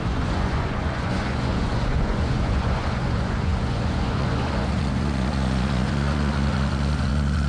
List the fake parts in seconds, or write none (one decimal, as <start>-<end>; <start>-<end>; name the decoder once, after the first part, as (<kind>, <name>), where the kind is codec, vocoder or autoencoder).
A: 0.0-7.5 (vocoder, Vocos)